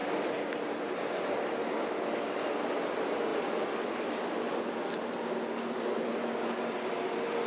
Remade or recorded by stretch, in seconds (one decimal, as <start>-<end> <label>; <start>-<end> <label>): 0.0-7.5 recorded